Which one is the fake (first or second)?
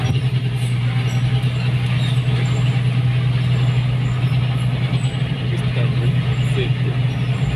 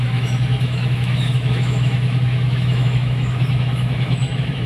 second